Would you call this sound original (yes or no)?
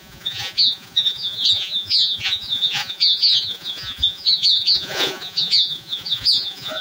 no